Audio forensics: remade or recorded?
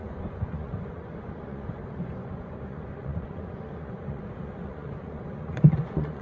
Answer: remade